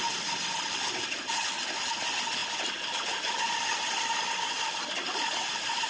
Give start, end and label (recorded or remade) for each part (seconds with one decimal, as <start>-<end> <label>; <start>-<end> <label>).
0.0-5.9 recorded